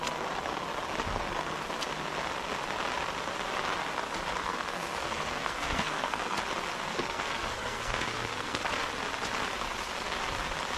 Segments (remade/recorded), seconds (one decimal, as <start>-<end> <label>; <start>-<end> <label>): 0.0-4.4 recorded; 4.4-6.4 remade; 6.4-6.9 recorded; 6.9-8.7 remade; 8.7-10.8 recorded